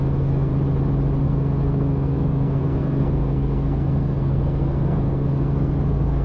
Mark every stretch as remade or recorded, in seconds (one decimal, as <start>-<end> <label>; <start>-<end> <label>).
0.0-0.5 remade; 0.5-1.2 recorded; 1.2-6.2 remade

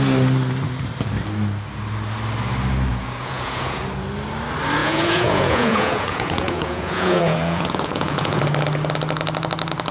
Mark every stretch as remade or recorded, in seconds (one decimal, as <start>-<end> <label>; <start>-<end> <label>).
0.0-2.9 recorded; 2.9-3.8 remade; 3.8-4.8 recorded; 4.8-8.4 remade; 8.4-9.9 recorded

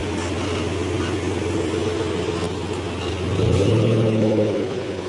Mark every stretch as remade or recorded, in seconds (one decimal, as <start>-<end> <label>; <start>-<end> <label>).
0.0-3.7 recorded; 3.7-5.1 remade

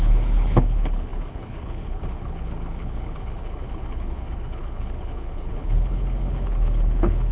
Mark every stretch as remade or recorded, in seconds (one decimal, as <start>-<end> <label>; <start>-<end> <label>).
0.0-7.3 remade

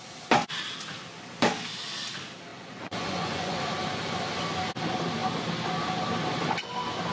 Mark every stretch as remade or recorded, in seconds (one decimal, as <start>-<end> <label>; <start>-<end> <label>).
0.0-2.5 recorded; 2.5-3.6 remade; 3.6-7.1 recorded

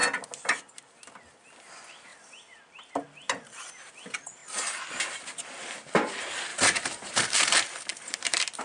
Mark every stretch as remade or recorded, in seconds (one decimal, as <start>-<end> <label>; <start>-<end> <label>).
0.0-6.5 recorded; 6.5-8.6 remade

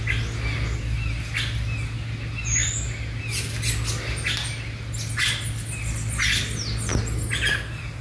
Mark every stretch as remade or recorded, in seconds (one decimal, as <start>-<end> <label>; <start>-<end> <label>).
0.0-8.0 recorded